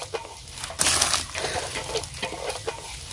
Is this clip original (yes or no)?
yes